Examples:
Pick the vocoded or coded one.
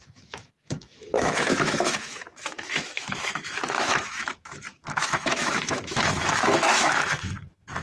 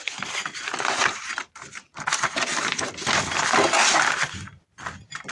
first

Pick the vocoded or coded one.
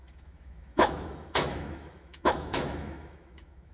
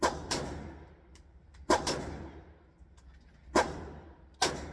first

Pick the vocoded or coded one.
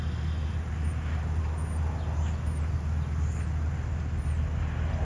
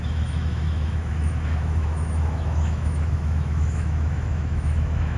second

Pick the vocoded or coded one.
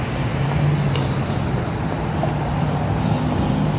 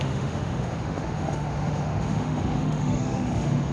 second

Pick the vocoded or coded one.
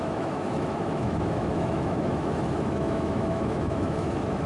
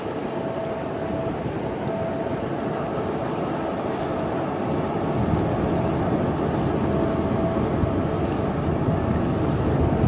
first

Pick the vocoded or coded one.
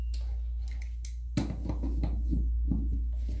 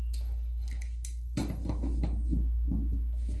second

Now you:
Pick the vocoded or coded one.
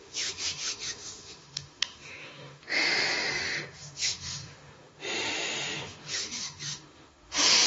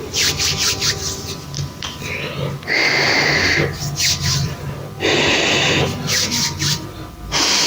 first